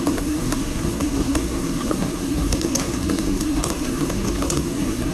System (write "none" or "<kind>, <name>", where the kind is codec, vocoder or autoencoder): codec, SNAC